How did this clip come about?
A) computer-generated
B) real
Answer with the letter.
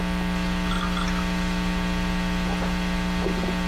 B